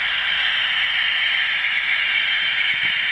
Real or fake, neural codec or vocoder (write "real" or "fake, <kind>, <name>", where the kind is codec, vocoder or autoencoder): real